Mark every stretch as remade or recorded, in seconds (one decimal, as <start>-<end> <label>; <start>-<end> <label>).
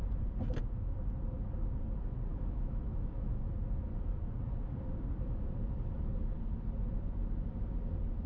0.0-2.3 recorded; 2.3-3.5 remade; 3.5-8.3 recorded